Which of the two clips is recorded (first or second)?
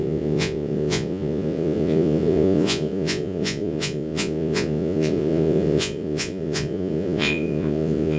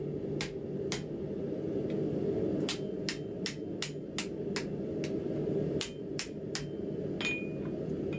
second